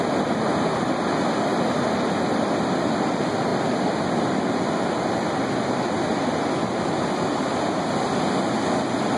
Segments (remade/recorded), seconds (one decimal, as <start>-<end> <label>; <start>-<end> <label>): 0.0-9.2 recorded